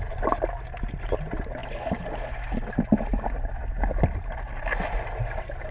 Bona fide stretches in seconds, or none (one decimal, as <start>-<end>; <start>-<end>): 0.0-5.7